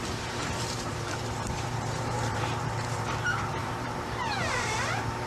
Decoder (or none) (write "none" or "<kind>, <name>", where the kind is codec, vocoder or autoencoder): vocoder, BigVGAN v2